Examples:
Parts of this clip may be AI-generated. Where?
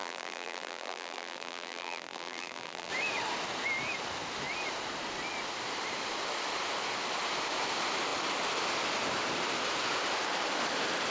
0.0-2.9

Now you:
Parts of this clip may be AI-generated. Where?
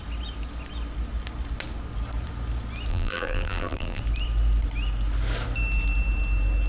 2.9-4.0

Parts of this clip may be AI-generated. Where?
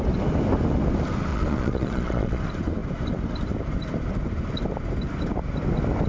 1.3-2.4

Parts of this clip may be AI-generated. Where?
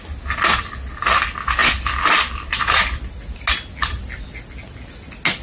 none